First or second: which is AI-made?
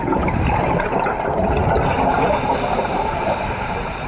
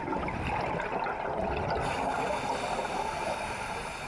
first